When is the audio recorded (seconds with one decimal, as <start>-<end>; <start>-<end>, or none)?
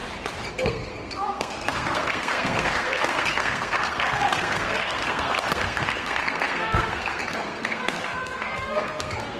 0.0-0.5